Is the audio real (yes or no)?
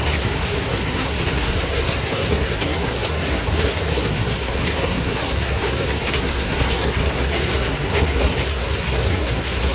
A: no